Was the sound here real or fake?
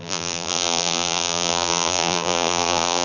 fake